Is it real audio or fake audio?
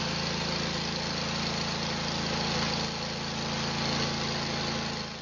real